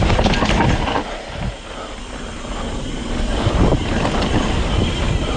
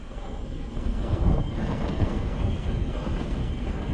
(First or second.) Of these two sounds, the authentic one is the first